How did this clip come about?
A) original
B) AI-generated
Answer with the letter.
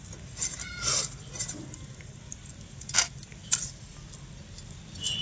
A